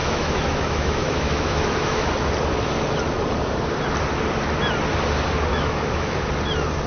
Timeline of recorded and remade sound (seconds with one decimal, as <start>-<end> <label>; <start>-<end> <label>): 0.0-2.1 remade; 2.1-5.5 recorded; 5.5-6.2 remade; 6.2-6.9 recorded